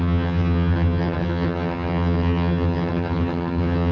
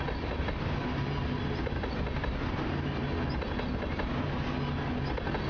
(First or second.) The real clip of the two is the second